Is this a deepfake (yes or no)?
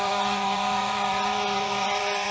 yes